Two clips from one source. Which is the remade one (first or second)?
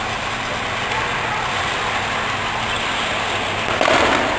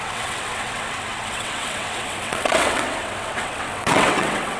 second